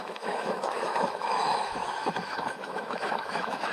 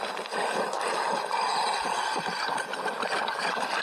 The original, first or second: second